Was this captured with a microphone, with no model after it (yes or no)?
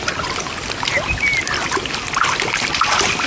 yes